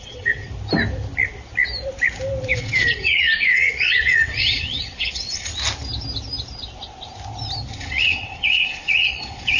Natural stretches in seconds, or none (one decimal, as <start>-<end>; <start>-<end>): 0.5-2.6; 5.5-7.8